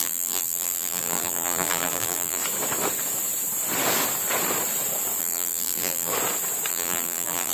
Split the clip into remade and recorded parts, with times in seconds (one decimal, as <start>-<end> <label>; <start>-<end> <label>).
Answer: 0.0-2.4 remade; 2.4-5.2 recorded; 5.2-6.1 remade; 6.1-6.7 recorded; 6.7-7.5 remade

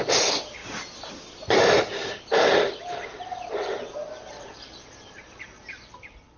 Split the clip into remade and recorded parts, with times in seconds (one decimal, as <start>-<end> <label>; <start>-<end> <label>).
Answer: 0.0-6.4 recorded

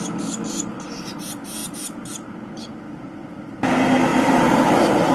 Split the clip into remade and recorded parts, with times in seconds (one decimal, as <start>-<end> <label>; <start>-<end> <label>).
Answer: 0.0-1.6 recorded; 1.6-2.8 remade; 2.8-4.1 recorded; 4.1-5.1 remade